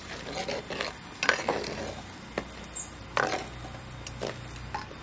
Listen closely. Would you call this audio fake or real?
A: real